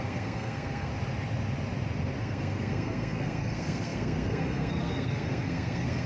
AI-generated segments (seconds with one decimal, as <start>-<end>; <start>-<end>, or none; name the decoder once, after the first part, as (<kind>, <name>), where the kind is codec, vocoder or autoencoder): 0.0-0.9 (codec, SNAC); 2.2-6.1